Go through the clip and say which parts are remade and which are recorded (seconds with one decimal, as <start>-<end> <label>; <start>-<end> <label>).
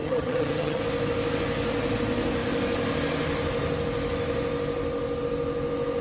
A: 0.0-0.8 remade; 0.8-6.0 recorded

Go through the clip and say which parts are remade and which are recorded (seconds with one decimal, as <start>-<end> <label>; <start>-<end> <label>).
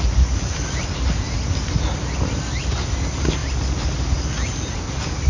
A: 0.0-5.3 recorded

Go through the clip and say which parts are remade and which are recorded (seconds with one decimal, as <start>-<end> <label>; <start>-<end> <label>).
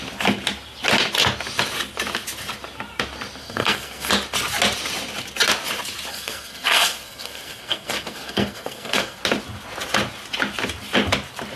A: 0.0-3.4 recorded; 3.4-4.1 remade; 4.1-6.1 recorded; 6.1-9.2 remade; 9.2-11.6 recorded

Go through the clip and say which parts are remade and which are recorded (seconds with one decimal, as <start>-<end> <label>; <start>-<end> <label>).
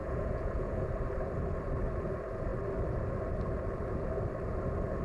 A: 0.0-0.9 remade; 0.9-5.0 recorded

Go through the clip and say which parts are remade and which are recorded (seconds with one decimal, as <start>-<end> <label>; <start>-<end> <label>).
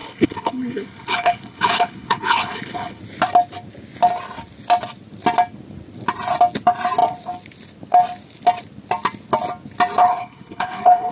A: 0.0-3.0 remade; 3.0-10.0 recorded; 10.0-11.1 remade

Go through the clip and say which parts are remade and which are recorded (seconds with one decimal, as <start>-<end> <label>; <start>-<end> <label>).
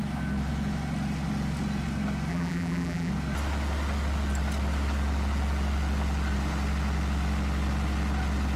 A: 0.0-2.3 recorded; 2.3-3.1 remade; 3.1-8.6 recorded